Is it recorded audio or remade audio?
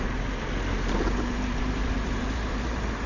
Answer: remade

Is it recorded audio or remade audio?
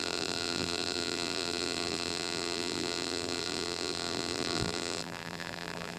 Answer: remade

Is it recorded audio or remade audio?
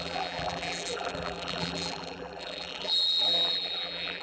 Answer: remade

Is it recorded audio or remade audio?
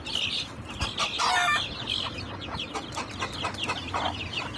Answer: recorded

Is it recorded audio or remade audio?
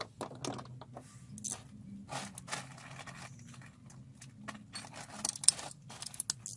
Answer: recorded